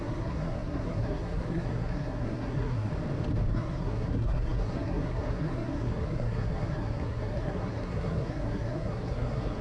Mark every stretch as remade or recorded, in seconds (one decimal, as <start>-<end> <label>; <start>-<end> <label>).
0.0-2.9 remade; 2.9-3.5 recorded; 3.5-9.6 remade